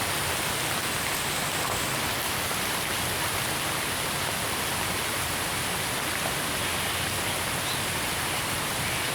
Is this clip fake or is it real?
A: real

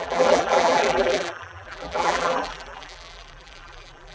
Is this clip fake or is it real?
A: fake